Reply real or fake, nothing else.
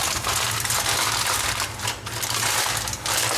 real